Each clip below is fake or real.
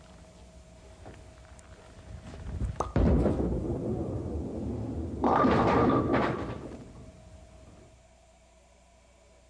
real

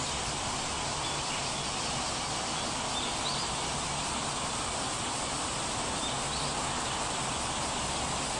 real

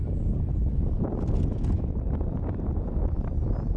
real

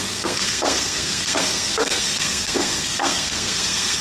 fake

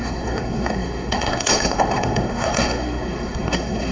fake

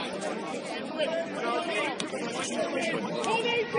real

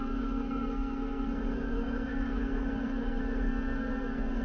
fake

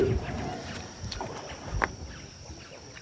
real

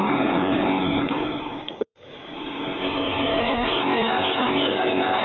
fake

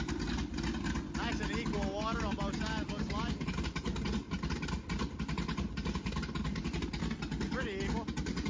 real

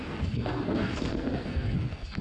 fake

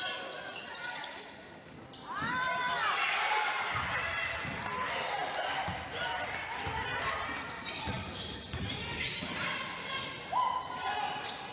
real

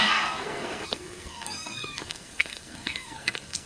fake